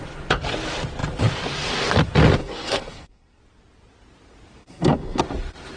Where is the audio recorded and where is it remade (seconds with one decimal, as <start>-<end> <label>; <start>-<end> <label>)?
0.0-2.4 recorded; 2.4-3.4 remade; 3.4-4.6 recorded; 4.6-5.2 remade; 5.2-5.8 recorded